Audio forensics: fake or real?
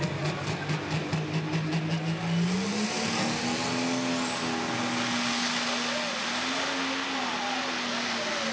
real